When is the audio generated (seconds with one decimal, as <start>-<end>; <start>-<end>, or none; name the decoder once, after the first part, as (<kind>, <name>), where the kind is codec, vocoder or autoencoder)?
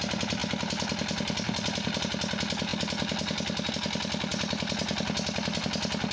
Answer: none